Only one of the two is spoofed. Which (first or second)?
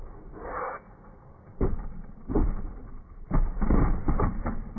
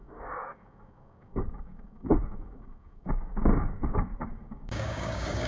second